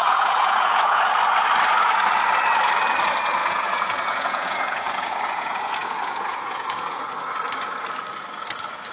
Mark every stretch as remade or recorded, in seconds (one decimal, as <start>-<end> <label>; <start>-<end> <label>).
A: 0.0-1.0 remade; 1.0-3.4 recorded; 3.4-7.0 remade; 7.0-8.9 recorded